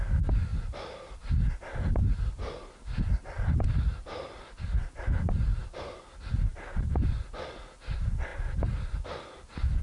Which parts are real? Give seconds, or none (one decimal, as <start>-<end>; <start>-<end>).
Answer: 0.0-9.8